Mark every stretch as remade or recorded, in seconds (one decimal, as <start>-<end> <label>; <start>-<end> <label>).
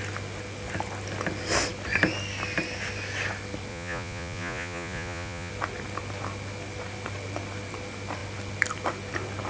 0.0-3.7 recorded; 3.7-5.5 remade; 5.5-9.5 recorded